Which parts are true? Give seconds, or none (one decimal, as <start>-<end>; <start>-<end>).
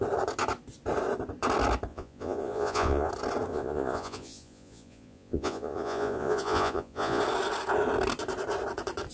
0.0-1.9; 3.1-3.5; 7.2-9.1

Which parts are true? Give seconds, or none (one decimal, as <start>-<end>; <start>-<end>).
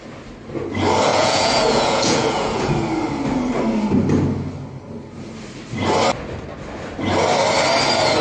0.0-1.1; 2.7-8.2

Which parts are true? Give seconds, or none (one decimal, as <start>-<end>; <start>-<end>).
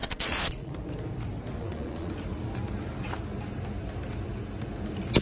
0.7-1.6; 2.1-5.2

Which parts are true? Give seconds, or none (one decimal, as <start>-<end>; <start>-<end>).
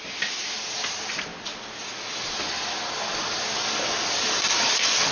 0.0-5.1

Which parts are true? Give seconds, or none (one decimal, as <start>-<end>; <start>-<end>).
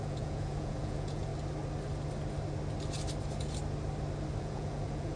1.3-4.4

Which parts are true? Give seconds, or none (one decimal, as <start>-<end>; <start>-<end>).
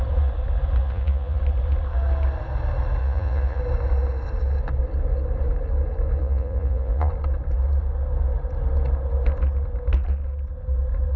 0.0-0.8; 1.4-3.0; 3.6-6.2; 7.1-11.2